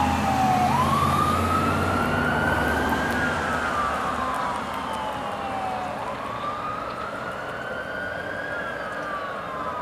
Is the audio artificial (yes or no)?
no